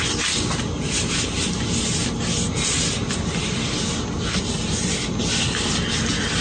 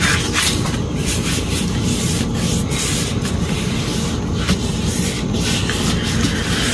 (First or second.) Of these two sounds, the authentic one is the first